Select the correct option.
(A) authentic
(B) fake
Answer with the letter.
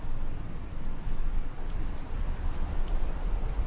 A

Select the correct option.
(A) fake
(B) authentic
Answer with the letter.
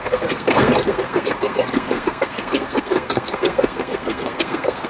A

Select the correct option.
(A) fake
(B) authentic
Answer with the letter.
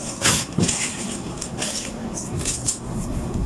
A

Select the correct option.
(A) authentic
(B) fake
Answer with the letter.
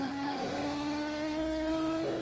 B